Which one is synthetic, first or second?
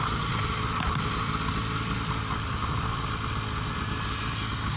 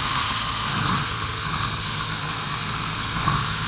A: second